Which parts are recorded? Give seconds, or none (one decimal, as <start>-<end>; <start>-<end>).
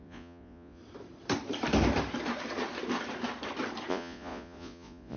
0.8-3.9